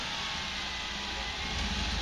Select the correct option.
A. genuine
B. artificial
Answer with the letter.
A